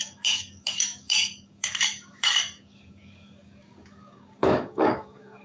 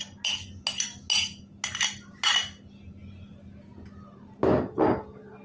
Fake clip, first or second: first